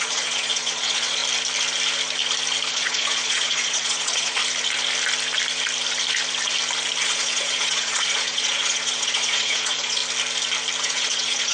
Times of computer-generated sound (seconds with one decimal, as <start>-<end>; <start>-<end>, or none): 0.0-1.2; 2.7-4.4; 7.0-10.0; 10.8-11.5